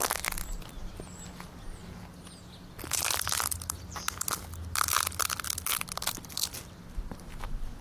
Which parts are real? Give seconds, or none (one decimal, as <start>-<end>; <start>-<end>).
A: 0.0-7.8